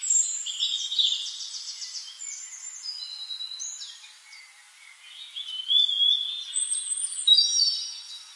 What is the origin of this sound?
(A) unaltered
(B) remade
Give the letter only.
A